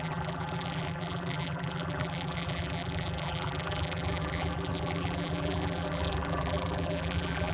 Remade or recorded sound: remade